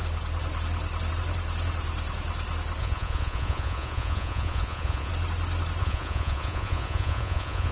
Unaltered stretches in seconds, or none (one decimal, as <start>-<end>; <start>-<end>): 0.0-2.8; 5.1-5.8